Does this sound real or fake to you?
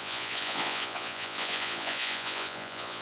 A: fake